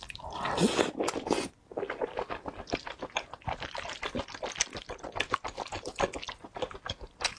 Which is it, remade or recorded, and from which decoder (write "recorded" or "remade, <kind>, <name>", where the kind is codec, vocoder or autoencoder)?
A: recorded